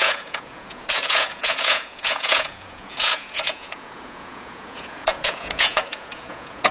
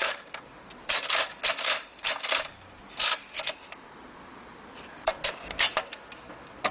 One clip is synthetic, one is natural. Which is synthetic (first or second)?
first